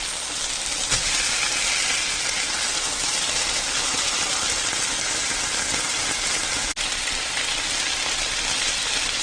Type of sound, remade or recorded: recorded